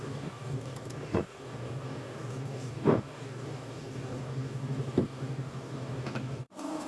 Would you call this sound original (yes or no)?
no